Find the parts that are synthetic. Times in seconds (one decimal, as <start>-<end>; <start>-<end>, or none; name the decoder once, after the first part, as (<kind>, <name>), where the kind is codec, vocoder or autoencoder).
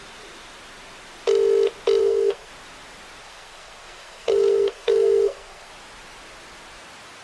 2.0-2.5 (codec, SNAC); 3.2-5.7